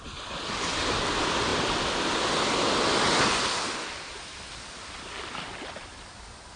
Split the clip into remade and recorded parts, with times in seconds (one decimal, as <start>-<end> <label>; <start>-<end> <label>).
0.0-1.5 remade; 1.5-4.9 recorded; 4.9-5.9 remade; 5.9-6.6 recorded